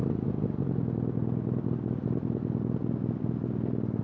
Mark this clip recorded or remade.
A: recorded